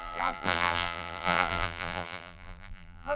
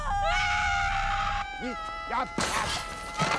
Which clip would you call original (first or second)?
second